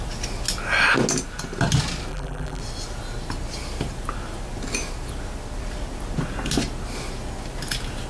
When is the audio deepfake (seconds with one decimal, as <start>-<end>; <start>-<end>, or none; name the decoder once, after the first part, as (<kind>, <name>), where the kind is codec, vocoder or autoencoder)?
2.1-2.6 (vocoder, BigVGAN v2)